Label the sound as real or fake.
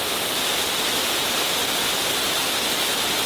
real